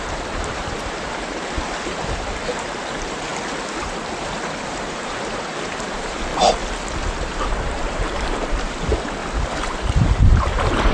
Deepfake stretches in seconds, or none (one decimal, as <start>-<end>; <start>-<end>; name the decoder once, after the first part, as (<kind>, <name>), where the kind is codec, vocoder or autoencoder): 0.0-3.3 (vocoder, BigVGAN v2); 4.2-6.3; 7.1-9.2; 9.8-10.9